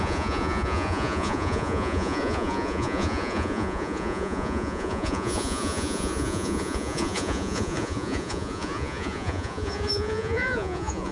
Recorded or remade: remade